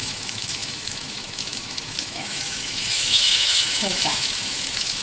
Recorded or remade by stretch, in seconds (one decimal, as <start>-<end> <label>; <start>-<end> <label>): 0.0-5.0 remade